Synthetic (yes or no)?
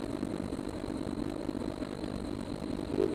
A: no